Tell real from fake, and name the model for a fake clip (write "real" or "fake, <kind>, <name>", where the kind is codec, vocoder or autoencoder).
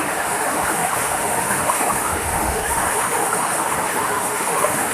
fake, autoencoder, DAC-VAE